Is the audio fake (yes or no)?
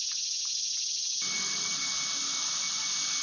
no